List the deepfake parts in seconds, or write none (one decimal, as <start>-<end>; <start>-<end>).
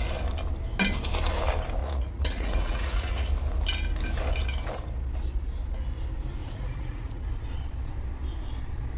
1.8-3.3; 6.4-7.3